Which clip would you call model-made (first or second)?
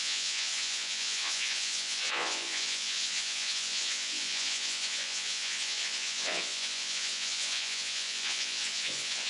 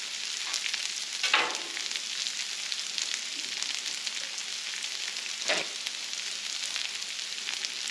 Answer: first